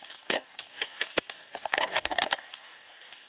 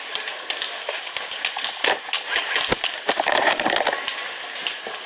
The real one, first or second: second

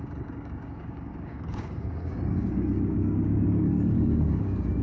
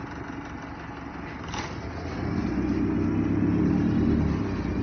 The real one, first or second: second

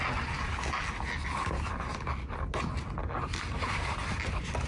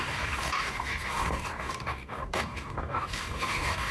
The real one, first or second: first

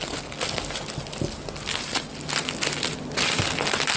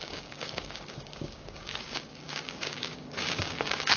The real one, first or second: first